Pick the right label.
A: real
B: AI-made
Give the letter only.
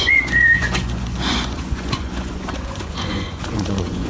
B